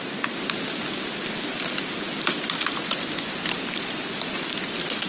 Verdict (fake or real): real